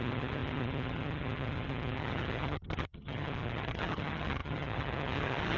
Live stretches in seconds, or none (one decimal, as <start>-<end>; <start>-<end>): none